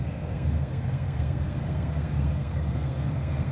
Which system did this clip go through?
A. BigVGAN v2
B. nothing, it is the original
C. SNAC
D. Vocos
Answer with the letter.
C